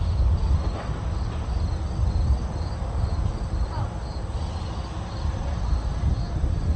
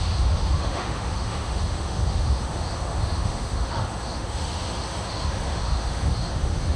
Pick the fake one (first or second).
second